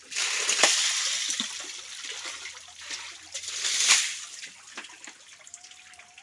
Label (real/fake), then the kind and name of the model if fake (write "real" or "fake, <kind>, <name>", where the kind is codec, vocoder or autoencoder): real